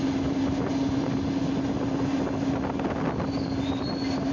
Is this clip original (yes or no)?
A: yes